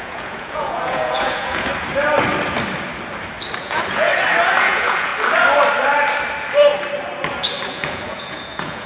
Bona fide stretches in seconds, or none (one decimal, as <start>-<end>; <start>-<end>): 1.7-3.6; 4.1-4.6; 5.1-7.7